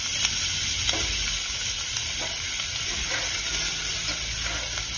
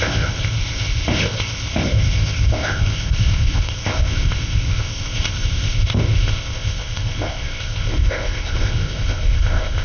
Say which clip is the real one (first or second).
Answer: first